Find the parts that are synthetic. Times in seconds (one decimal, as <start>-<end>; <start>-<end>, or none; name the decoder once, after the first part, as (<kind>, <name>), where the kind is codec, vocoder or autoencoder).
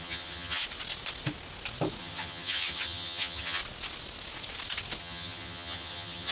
0.0-0.6 (vocoder, HiFi-GAN); 2.0-3.6; 5.0-6.3